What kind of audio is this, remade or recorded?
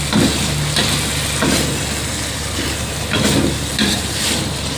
recorded